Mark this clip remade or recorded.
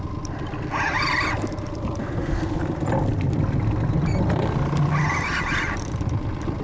recorded